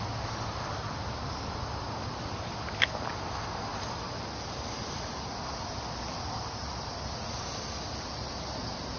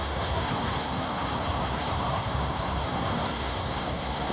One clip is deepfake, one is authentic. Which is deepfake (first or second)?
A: second